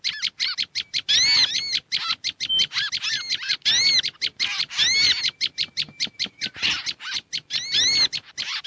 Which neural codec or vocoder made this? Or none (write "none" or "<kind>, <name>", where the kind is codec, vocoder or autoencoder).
none